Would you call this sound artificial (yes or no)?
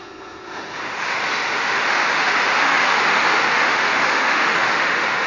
yes